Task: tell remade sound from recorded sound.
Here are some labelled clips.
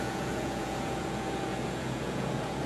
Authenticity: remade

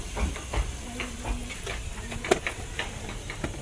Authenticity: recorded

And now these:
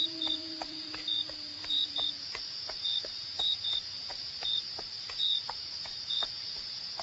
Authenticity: remade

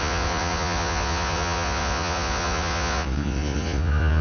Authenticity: remade